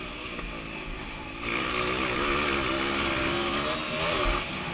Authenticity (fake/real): real